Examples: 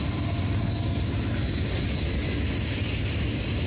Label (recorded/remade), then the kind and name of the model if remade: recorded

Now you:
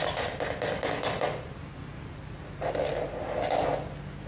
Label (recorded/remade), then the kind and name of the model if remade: recorded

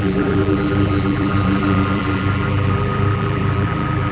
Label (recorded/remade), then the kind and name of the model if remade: remade, vocoder, BigVGAN v2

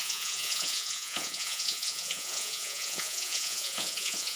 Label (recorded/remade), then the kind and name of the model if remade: remade, vocoder, Vocos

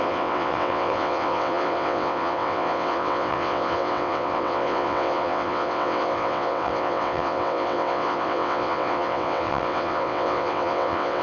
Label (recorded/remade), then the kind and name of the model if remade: remade, vocoder, WaveNeXt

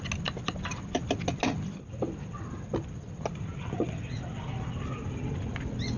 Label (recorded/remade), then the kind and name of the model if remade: recorded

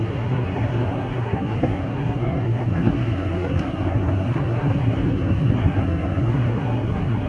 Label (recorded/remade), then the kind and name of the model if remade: remade, codec, SNAC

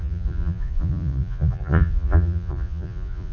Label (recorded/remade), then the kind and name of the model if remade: remade, vocoder, Vocos